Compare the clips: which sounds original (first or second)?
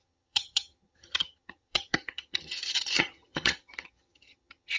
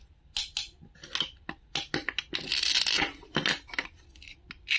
second